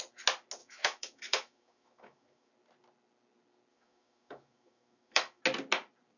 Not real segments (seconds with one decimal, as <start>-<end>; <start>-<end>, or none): 0.6-2.5; 3.7-5.4